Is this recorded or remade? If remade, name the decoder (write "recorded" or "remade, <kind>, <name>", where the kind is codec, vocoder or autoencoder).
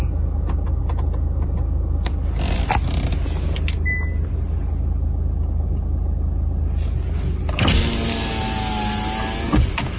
recorded